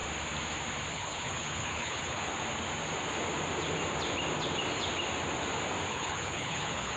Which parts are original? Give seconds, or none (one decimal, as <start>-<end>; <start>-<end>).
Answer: 0.0-0.9; 2.3-5.9